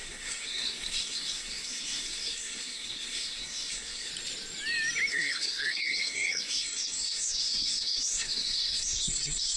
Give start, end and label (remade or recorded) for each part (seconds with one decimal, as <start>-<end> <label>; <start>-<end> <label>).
0.0-4.1 remade; 4.1-5.1 recorded; 5.1-9.6 remade